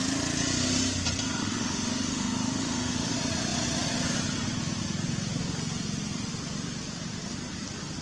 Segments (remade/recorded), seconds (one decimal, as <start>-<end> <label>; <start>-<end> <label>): 0.0-1.4 recorded; 1.4-3.1 remade; 3.1-8.0 recorded